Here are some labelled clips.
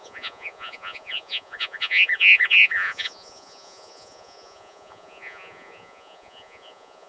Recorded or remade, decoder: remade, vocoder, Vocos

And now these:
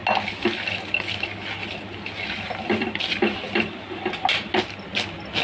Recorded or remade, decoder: recorded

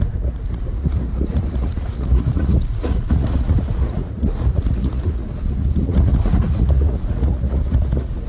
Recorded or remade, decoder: remade, vocoder, Vocos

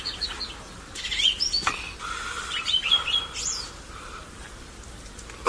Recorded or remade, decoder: recorded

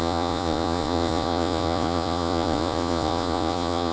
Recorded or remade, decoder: remade, vocoder, Vocos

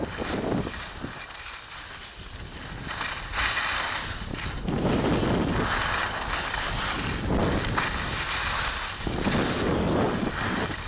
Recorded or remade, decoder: recorded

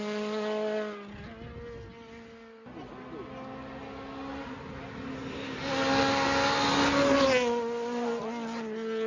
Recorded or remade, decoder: recorded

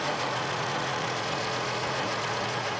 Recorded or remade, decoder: remade, vocoder, Vocos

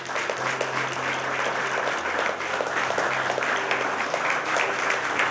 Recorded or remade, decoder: recorded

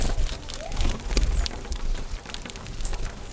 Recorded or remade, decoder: recorded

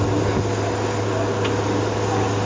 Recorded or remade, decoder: recorded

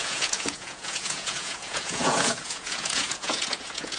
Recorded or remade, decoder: remade, vocoder, Vocos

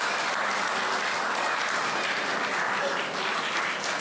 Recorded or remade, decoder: recorded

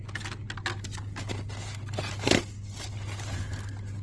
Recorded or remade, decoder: recorded